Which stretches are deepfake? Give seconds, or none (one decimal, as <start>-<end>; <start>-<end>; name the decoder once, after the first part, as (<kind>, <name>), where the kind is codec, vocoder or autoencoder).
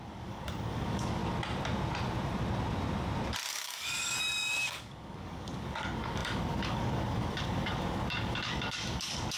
0.0-1.2 (codec, DAC); 3.5-9.4